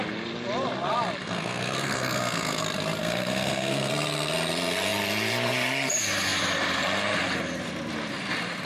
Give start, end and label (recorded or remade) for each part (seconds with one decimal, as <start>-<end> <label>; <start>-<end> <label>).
0.0-1.2 recorded; 1.2-2.6 remade; 2.6-3.0 recorded; 3.0-3.9 remade; 3.9-8.7 recorded